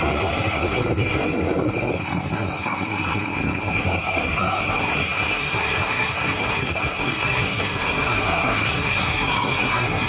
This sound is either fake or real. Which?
fake